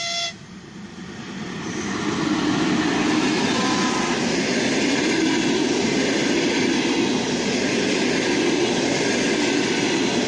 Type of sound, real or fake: real